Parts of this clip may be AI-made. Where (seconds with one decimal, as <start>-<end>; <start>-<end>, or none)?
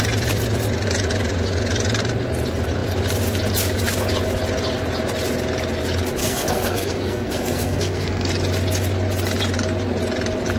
6.2-8.3